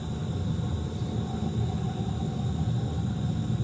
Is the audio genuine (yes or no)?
yes